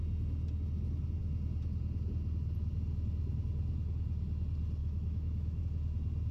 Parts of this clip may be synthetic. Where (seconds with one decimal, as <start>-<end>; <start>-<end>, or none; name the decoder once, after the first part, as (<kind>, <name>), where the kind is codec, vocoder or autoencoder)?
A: 4.8-5.6 (autoencoder, DAC-VAE)